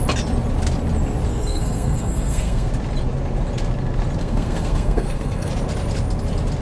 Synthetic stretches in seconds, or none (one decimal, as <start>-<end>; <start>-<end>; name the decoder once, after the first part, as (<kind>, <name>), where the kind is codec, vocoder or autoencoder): 1.3-2.7 (codec, SNAC); 4.2-5.5